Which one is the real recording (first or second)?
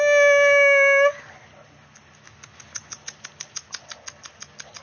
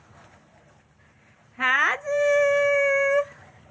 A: first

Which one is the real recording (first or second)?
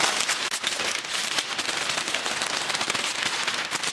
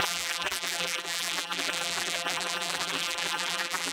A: first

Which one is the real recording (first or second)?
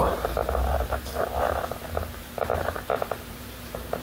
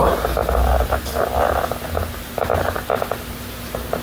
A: second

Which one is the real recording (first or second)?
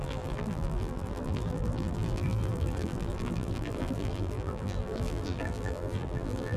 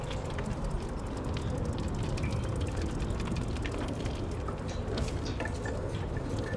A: second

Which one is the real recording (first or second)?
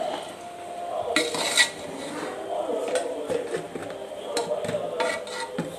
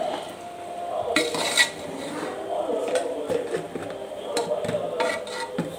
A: first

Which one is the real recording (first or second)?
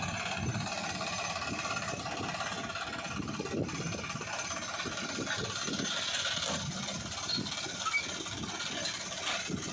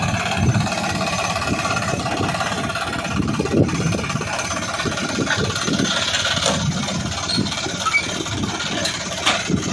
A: first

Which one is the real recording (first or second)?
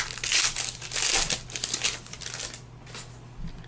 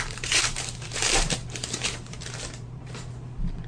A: first